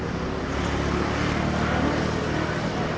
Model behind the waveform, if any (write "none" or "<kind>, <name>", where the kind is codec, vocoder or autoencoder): none